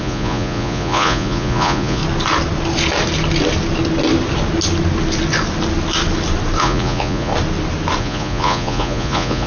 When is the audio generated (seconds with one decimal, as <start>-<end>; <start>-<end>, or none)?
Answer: 0.0-2.0; 6.6-7.3; 8.0-9.5